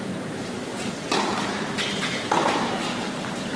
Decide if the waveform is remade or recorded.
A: remade